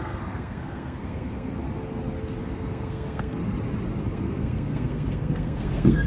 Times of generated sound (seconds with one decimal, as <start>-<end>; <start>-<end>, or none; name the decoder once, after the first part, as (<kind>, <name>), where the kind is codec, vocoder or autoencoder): 0.0-1.5 (codec, SNAC); 2.4-3.4; 4.0-6.1